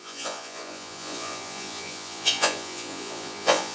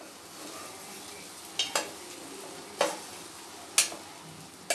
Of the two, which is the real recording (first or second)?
second